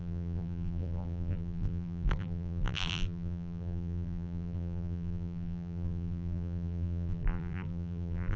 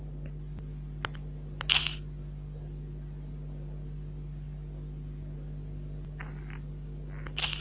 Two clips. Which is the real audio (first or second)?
second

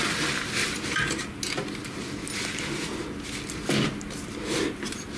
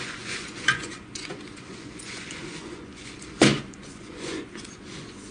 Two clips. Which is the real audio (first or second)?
first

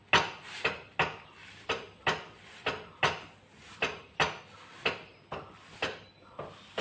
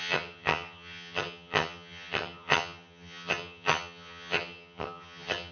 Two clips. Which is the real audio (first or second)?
first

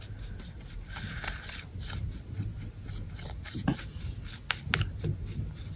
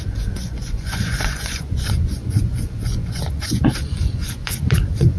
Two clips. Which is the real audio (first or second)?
first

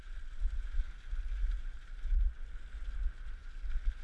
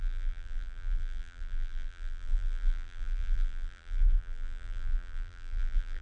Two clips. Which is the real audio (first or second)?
first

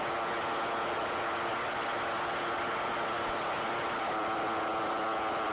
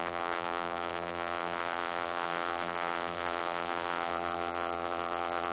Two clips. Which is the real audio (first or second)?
first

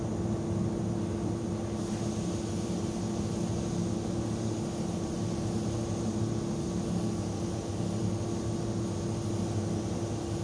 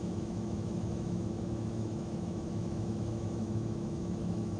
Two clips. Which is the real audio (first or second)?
first